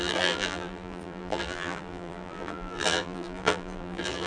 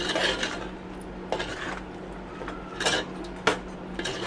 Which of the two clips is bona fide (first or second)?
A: second